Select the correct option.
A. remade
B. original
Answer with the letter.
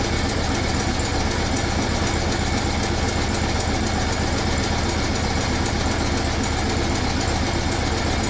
B